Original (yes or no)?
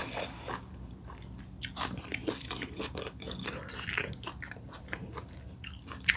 yes